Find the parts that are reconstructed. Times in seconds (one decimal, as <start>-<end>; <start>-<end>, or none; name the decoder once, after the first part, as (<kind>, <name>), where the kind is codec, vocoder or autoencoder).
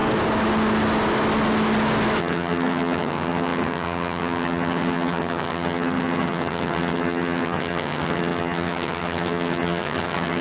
2.2-10.4 (vocoder, HiFi-GAN)